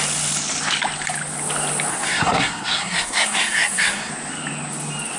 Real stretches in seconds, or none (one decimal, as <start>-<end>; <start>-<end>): 0.0-1.9; 4.1-5.2